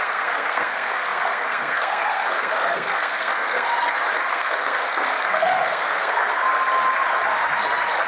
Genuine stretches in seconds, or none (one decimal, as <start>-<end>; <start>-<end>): 3.7-4.3; 6.4-8.1